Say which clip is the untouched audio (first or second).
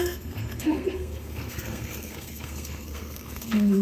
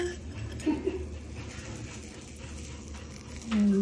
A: second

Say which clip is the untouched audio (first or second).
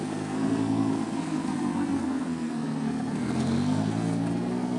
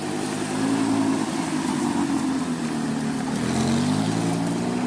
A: second